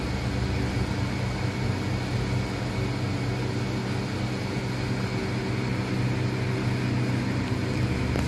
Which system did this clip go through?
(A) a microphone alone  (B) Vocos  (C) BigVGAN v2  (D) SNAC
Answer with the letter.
A